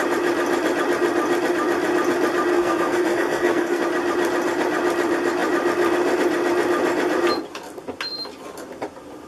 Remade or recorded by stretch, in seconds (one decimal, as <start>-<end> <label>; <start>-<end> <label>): 0.0-2.5 recorded; 2.5-3.8 remade; 3.8-9.3 recorded